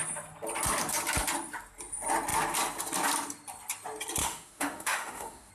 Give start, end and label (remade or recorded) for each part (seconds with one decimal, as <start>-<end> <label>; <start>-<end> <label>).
0.0-4.2 recorded; 4.2-5.5 remade